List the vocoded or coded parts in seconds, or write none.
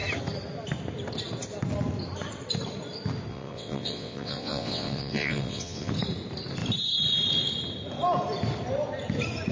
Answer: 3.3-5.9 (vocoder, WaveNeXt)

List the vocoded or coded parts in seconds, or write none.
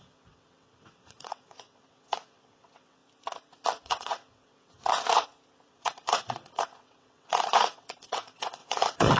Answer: 0.0-3.0 (vocoder, WaveNeXt); 3.8-4.8; 5.7-9.2